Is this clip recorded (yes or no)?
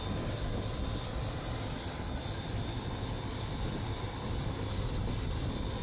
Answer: yes